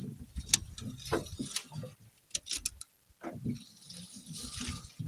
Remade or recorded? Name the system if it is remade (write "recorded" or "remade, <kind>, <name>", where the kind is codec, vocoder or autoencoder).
recorded